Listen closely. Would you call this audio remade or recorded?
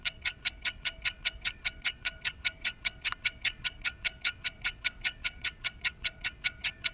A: remade